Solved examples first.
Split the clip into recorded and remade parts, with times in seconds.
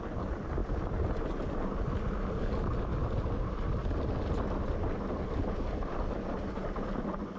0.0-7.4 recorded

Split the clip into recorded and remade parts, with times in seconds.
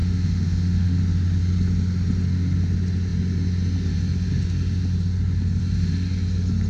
0.0-1.0 remade; 1.0-6.7 recorded